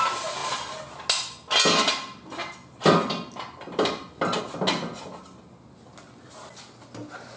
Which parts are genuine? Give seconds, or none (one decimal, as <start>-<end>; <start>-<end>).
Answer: 0.0-7.4